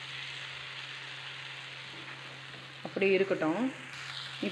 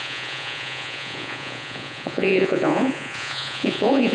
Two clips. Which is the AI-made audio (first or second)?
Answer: second